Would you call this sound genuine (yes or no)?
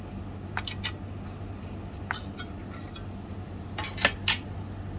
yes